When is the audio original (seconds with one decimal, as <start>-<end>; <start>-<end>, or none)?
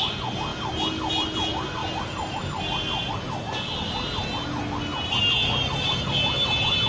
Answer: 0.0-6.9